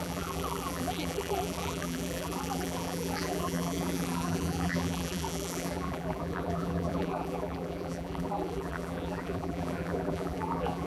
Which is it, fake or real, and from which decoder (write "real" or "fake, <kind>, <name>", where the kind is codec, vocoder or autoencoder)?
fake, vocoder, BigVGAN v2